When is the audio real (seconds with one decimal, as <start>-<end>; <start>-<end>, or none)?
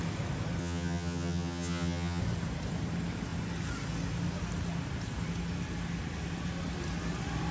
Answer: 0.0-0.6; 2.2-7.5